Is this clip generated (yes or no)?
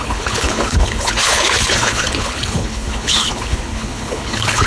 yes